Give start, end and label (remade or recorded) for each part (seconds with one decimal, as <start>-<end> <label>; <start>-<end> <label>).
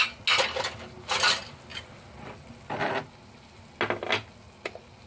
0.0-5.1 recorded